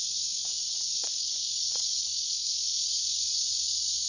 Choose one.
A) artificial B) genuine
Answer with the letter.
A